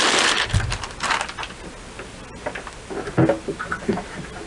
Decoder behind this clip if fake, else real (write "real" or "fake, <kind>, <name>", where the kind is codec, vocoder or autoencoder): real